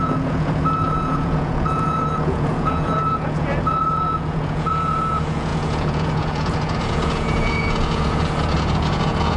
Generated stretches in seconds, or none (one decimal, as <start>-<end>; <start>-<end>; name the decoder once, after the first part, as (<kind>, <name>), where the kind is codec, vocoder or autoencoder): 0.0-9.4 (vocoder, Vocos)